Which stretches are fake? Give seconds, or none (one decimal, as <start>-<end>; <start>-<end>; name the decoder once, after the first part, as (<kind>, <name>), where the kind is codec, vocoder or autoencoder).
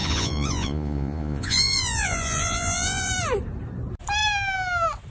0.0-3.1 (vocoder, Vocos)